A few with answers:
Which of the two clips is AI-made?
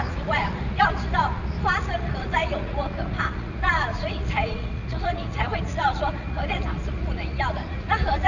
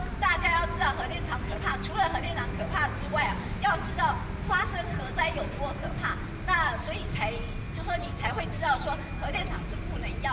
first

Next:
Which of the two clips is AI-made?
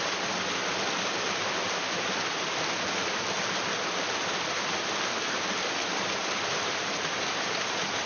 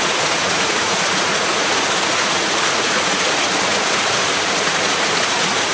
second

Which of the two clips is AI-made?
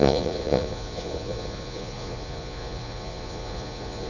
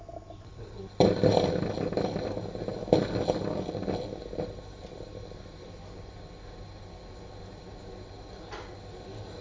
first